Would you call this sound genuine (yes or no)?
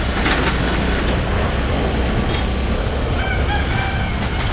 yes